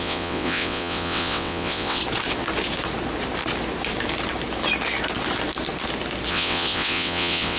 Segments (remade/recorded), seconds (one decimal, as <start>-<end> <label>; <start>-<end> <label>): 0.0-2.0 remade; 2.0-6.3 recorded; 6.3-7.6 remade